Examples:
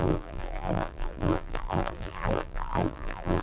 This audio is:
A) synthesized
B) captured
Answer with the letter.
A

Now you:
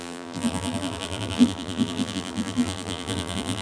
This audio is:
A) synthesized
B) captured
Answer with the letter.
A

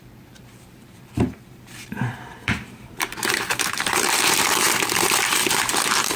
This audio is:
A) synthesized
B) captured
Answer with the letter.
A